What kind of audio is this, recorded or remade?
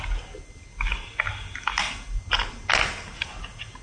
recorded